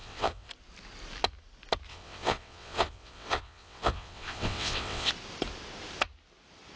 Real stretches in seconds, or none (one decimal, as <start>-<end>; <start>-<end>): 0.5-1.9; 5.1-6.8